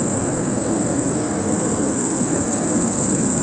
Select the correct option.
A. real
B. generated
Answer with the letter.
B